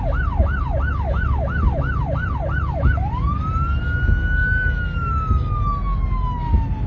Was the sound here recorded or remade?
recorded